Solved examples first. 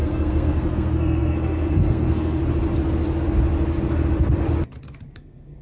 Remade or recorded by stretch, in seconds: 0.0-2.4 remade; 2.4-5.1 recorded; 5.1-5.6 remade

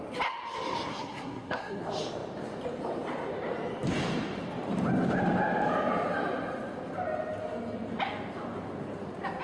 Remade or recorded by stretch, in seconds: 0.0-0.9 recorded; 0.9-1.8 remade; 1.8-9.4 recorded

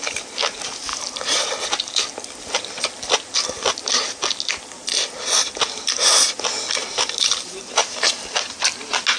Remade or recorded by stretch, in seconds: 0.0-6.8 recorded; 6.8-8.1 remade; 8.1-9.2 recorded